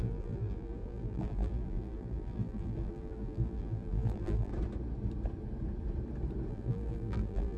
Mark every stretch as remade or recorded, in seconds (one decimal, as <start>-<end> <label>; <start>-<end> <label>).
0.0-4.5 remade; 4.5-6.5 recorded; 6.5-7.6 remade